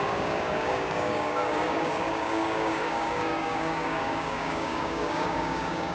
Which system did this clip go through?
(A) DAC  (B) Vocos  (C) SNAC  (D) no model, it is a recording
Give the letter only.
A